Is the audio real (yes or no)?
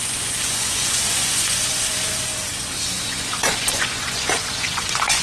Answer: no